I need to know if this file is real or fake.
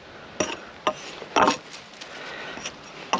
real